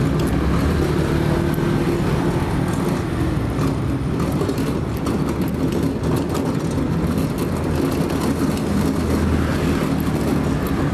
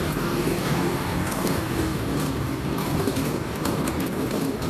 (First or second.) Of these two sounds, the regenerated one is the second